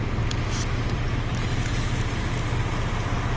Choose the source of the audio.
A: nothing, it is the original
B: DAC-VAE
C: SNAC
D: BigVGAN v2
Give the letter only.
A